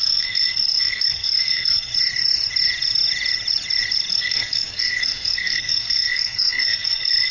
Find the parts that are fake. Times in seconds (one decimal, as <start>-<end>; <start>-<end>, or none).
0.0-1.9; 4.1-7.3